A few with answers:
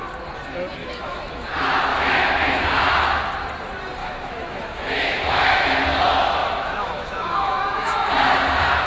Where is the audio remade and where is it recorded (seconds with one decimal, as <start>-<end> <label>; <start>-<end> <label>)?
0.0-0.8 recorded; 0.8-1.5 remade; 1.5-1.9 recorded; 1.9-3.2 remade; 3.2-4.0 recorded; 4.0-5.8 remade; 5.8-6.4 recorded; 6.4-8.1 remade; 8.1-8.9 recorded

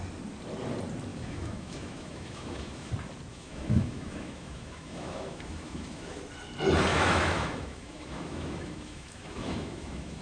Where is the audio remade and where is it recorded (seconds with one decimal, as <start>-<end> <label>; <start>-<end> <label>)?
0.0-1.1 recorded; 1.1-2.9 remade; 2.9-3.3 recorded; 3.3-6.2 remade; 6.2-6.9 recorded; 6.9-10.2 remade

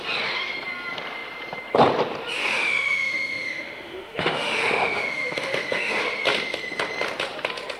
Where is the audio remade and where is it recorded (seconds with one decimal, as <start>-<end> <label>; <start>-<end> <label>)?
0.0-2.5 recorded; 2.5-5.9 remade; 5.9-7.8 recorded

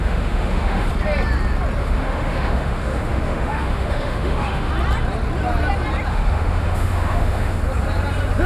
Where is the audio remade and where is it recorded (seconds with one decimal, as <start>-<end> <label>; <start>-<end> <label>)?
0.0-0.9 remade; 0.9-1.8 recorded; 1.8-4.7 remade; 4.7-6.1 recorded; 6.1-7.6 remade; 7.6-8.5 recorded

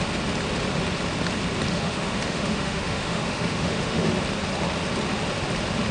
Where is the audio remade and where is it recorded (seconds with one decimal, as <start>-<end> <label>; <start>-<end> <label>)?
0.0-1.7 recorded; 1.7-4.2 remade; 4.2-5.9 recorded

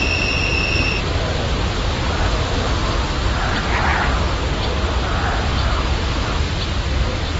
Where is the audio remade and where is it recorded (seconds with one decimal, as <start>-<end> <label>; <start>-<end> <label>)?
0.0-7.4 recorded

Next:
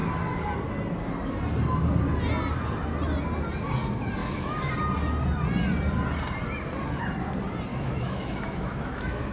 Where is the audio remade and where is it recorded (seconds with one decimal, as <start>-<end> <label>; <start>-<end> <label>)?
0.0-4.2 recorded; 4.2-4.7 remade; 4.7-7.7 recorded; 7.7-9.3 remade

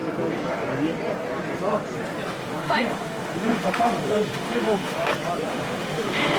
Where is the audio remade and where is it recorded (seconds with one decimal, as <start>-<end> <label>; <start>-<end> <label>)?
0.0-2.4 recorded; 2.4-5.1 remade; 5.1-5.5 recorded; 5.5-6.4 remade